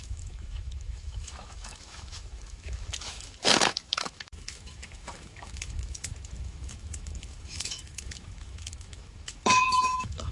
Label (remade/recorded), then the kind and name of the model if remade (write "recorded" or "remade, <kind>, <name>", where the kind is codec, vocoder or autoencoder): remade, autoencoder, DAC-VAE